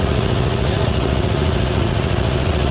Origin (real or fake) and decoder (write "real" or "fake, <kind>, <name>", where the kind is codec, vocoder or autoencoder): fake, vocoder, Vocos